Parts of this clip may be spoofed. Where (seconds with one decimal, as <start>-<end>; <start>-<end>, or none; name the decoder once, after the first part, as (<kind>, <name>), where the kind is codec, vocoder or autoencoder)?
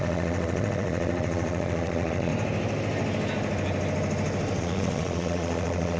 0.0-2.3 (vocoder, Vocos); 4.6-6.0